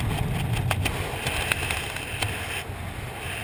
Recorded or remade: recorded